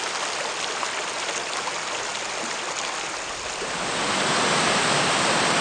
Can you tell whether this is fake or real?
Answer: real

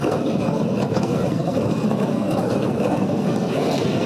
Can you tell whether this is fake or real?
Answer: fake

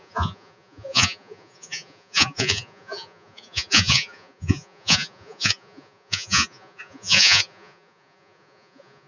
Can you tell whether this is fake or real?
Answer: fake